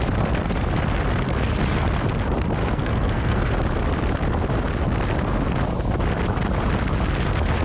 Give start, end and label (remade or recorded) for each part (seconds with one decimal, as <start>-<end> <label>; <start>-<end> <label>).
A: 0.0-2.6 recorded; 2.6-3.5 remade; 3.5-7.6 recorded

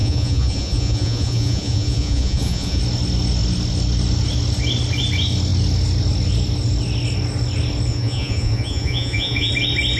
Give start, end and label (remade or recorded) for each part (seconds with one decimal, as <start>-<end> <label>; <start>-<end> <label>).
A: 0.0-2.8 remade; 2.8-7.9 recorded; 7.9-9.5 remade; 9.5-10.0 recorded

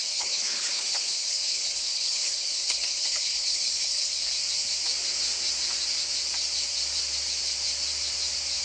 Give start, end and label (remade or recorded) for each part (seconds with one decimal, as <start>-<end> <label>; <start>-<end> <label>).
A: 0.0-4.3 remade; 4.3-8.6 recorded

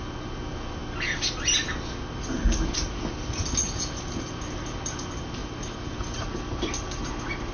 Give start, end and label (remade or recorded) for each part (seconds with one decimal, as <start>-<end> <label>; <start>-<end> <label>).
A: 0.0-7.5 recorded

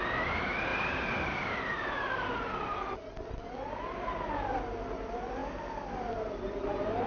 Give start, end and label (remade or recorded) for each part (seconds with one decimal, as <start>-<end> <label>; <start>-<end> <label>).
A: 0.0-7.1 recorded